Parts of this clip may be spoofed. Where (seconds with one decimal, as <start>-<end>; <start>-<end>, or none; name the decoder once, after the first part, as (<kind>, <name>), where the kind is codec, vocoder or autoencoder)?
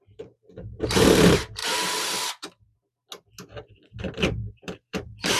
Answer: 0.0-1.6 (vocoder, BigVGAN v2); 3.7-5.4